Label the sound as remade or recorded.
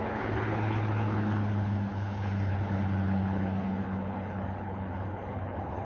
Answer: remade